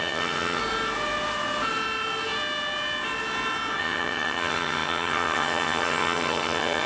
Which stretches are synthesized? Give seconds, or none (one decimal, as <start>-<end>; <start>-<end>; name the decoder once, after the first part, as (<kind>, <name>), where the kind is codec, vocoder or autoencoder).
0.0-0.6 (vocoder, HiFi-GAN); 3.8-6.9